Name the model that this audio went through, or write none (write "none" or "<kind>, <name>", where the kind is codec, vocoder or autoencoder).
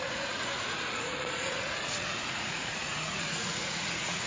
vocoder, Vocos